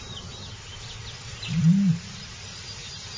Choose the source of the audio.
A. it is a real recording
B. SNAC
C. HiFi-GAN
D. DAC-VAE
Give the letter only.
A